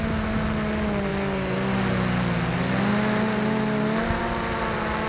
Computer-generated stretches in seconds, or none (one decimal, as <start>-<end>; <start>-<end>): none